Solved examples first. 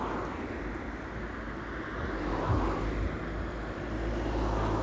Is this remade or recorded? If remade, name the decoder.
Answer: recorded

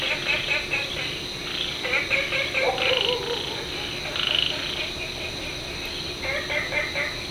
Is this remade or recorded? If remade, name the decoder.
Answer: recorded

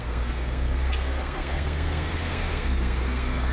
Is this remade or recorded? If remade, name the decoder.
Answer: remade, codec, SNAC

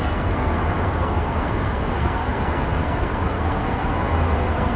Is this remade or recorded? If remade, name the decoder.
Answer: remade, codec, SNAC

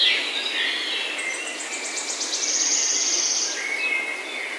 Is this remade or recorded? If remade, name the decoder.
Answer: recorded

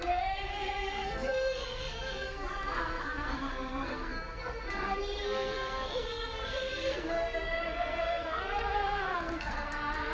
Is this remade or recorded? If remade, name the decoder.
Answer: remade, codec, SNAC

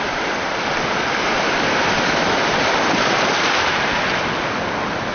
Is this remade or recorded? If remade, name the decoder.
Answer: recorded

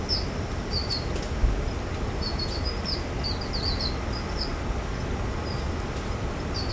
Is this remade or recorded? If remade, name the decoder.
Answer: recorded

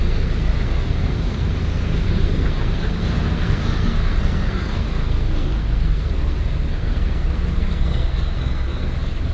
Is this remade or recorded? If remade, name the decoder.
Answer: remade, codec, SNAC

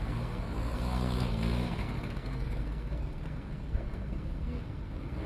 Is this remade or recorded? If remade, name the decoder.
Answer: remade, codec, SNAC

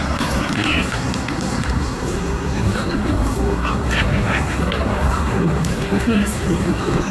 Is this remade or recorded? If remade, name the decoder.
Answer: remade, codec, SNAC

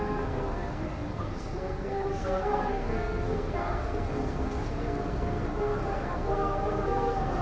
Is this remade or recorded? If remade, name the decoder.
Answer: remade, codec, SNAC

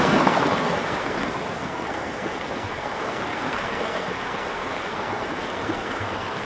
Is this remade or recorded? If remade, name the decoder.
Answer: remade, codec, SNAC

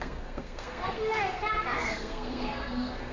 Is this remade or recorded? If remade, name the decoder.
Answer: remade, codec, SNAC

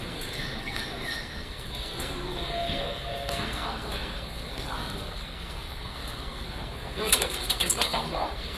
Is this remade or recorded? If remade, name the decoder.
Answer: remade, codec, SNAC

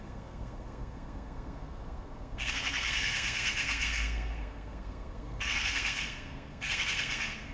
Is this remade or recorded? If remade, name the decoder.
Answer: remade, codec, SNAC